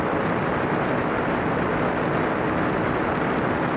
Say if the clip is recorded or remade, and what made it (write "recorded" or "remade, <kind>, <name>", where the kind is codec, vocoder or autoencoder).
recorded